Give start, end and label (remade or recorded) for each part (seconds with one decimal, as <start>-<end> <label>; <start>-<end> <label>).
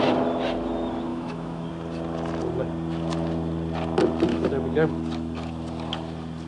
0.0-1.1 recorded; 1.1-1.7 remade; 1.7-4.3 recorded; 4.3-4.9 remade; 4.9-6.5 recorded